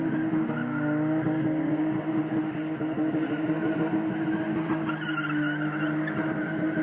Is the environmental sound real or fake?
real